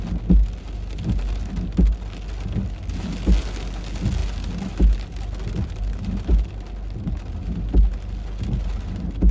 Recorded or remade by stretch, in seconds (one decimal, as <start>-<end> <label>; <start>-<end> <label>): 0.0-9.3 recorded